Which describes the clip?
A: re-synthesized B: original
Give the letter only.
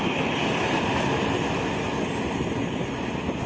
B